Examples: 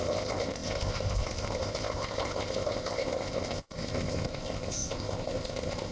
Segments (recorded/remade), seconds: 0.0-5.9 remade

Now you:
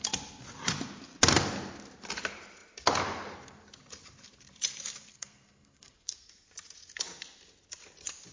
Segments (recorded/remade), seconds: 0.0-5.1 recorded; 5.1-6.3 remade; 6.3-8.3 recorded

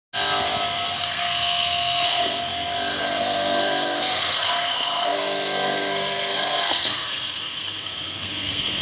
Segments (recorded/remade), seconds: 0.0-1.0 recorded; 1.0-2.5 remade; 2.5-3.0 recorded; 3.0-8.8 remade

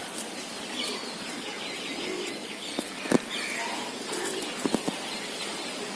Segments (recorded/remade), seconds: 0.0-6.0 recorded

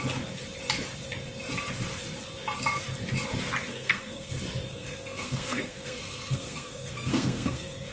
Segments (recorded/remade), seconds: 0.0-3.7 recorded; 3.7-4.3 remade; 4.3-4.7 recorded; 4.7-7.9 remade

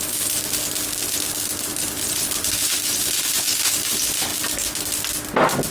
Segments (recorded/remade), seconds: 0.0-5.7 recorded

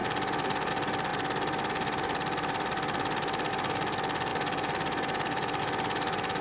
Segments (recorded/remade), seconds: 0.0-1.1 recorded; 1.1-3.5 remade; 3.5-4.3 recorded; 4.3-5.6 remade; 5.6-6.4 recorded

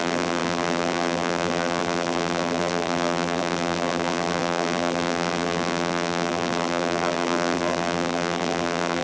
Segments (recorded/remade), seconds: 0.0-9.0 remade